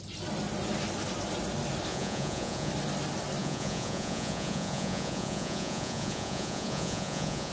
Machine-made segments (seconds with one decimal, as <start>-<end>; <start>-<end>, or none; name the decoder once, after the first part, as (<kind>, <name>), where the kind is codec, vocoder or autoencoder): 1.9-2.7 (vocoder, Vocos); 3.4-7.5